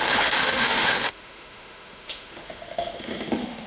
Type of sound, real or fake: fake